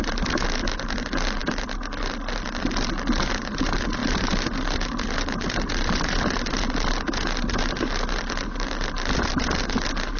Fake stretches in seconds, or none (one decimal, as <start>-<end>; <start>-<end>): none